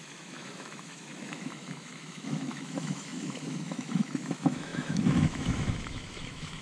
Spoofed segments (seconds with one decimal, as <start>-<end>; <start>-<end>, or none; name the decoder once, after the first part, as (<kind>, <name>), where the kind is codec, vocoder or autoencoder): 0.0-6.6 (autoencoder, DAC-VAE)